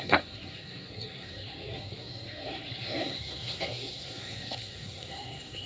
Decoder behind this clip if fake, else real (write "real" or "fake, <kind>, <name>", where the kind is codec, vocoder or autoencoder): fake, codec, SNAC